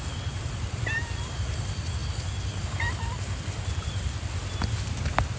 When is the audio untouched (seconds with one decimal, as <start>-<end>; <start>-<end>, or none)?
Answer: 0.0-5.4